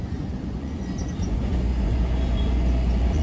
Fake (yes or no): yes